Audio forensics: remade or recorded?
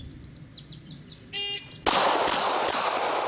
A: recorded